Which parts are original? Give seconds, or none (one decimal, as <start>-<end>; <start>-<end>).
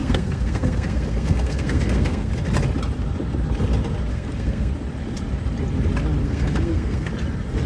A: 2.3-4.1; 4.7-6.2; 7.1-7.7